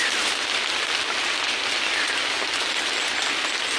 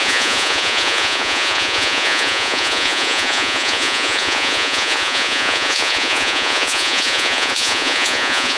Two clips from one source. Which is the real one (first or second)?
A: first